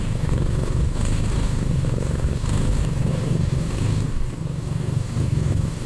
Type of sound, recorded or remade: remade